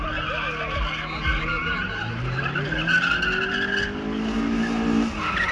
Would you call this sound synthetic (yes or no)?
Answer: no